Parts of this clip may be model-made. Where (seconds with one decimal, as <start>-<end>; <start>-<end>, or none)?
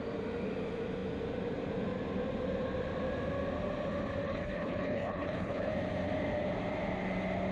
4.2-5.7